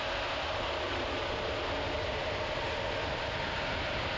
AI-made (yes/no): no